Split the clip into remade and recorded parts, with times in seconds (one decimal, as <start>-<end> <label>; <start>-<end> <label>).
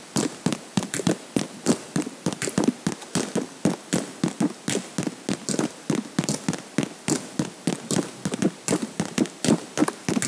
0.0-0.5 recorded; 0.5-2.8 remade; 2.8-10.3 recorded